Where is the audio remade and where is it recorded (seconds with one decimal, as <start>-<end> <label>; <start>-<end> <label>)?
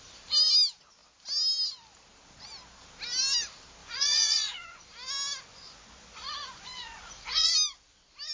0.0-3.8 recorded; 3.8-4.8 remade; 4.8-5.5 recorded; 5.5-7.5 remade; 7.5-8.3 recorded